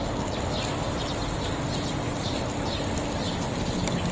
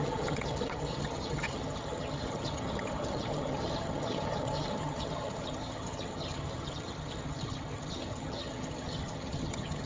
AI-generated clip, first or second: second